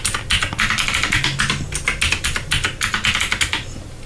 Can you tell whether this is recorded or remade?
recorded